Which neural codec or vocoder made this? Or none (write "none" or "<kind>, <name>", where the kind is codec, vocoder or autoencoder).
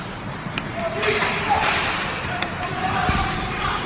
vocoder, BigVGAN v2